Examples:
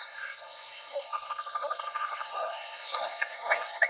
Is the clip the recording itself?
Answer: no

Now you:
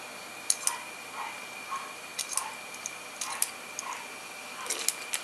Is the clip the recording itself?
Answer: yes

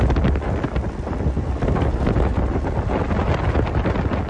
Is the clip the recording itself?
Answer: yes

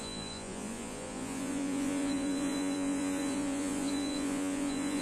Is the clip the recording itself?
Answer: no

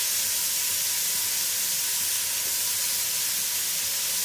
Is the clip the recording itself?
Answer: yes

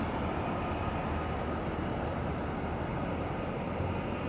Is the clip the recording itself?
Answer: yes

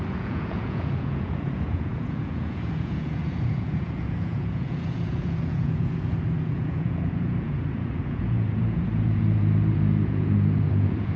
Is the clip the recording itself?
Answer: no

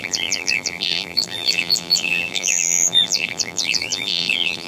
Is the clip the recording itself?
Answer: no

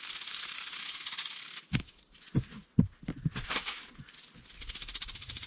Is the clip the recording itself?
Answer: yes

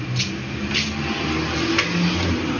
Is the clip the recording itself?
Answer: yes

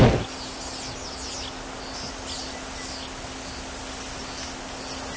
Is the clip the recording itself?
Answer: yes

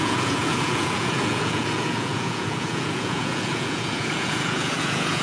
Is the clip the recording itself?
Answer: no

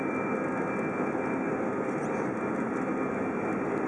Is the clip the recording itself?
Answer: yes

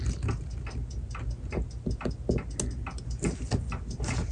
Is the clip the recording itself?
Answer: yes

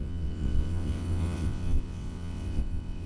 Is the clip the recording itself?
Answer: no